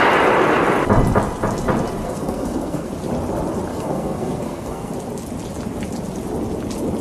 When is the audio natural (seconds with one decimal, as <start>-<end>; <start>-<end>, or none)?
0.0-2.0; 2.9-3.7; 4.9-7.0